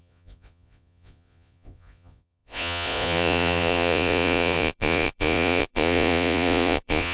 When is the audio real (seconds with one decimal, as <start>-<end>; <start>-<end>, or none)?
none